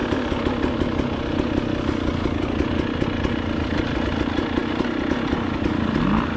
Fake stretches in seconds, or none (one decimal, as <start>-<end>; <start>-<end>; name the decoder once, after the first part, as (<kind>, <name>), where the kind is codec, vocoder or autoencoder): none